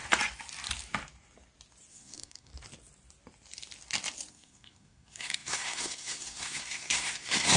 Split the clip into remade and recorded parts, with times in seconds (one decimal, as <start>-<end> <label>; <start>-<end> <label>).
0.0-1.9 recorded; 1.9-2.5 remade; 2.5-4.3 recorded; 4.3-7.6 remade